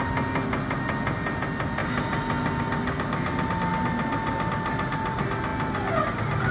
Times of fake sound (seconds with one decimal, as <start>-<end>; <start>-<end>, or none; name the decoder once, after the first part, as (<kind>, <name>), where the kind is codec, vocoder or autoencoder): none